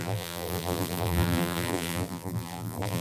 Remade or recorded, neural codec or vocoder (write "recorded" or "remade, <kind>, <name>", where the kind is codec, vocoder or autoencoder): remade, vocoder, BigVGAN v2